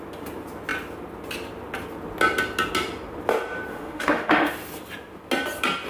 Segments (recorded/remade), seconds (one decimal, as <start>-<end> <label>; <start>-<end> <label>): 0.0-3.7 recorded; 3.7-4.5 remade; 4.5-5.9 recorded

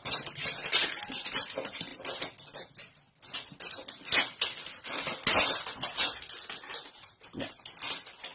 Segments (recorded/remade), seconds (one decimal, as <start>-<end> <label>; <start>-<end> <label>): 0.0-1.9 remade; 1.9-6.9 recorded; 6.9-8.3 remade

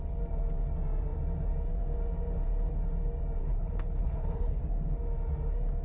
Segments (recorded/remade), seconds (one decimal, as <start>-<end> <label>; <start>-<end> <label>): 0.0-3.4 recorded; 3.4-4.6 remade; 4.6-5.8 recorded

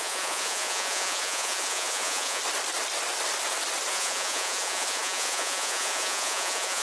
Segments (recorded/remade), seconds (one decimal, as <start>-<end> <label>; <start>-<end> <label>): 0.0-2.4 remade; 2.4-3.9 recorded; 3.9-6.8 remade

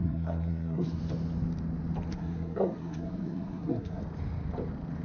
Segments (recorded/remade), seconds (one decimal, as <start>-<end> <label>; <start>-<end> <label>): 0.0-1.0 remade; 1.0-2.1 recorded; 2.1-4.0 remade; 4.0-5.0 recorded

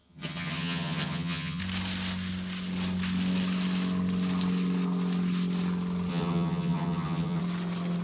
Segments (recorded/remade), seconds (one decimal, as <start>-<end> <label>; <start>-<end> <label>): 0.0-1.6 remade; 1.6-6.1 recorded; 6.1-7.4 remade; 7.4-8.0 recorded